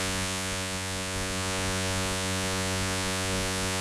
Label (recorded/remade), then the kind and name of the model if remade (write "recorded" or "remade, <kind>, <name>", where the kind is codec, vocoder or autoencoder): remade, vocoder, Vocos